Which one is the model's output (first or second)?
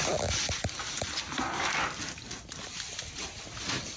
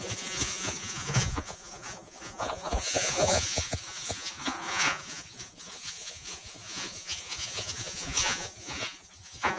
second